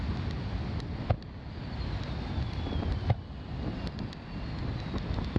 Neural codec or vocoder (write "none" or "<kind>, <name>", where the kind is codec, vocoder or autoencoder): none